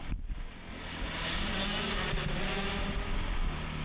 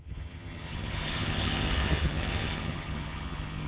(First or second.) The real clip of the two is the first